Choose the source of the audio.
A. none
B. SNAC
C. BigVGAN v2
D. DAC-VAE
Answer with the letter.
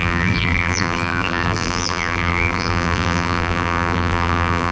C